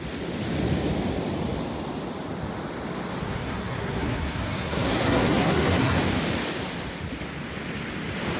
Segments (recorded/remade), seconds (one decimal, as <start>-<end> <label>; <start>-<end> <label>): 0.0-3.2 recorded; 3.2-6.0 remade; 6.0-8.4 recorded